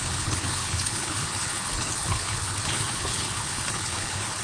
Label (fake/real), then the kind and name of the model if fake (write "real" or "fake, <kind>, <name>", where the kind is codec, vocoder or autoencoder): fake, codec, HILCodec